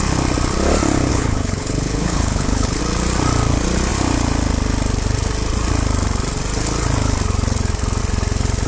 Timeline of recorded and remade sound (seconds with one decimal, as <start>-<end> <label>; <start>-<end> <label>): 0.0-1.1 recorded; 1.1-2.8 remade; 2.8-8.7 recorded